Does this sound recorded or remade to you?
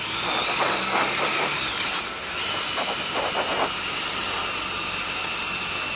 recorded